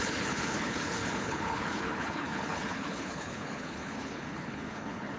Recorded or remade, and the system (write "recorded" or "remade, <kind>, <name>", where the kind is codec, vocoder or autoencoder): remade, codec, HILCodec